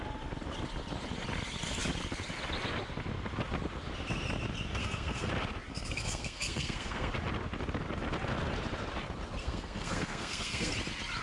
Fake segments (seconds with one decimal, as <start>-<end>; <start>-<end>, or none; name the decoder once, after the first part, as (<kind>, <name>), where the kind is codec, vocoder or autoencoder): 4.8-5.3 (codec, SNAC); 5.7-7.1; 9.4-10.7